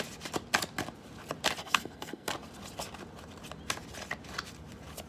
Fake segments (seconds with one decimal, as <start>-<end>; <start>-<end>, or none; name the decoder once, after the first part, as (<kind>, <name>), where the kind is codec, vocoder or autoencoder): 1.6-2.3 (codec, SNAC)